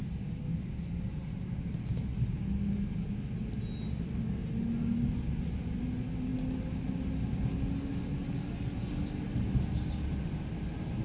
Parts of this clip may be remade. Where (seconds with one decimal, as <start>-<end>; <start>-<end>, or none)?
none